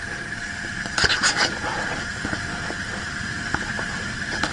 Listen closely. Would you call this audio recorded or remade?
remade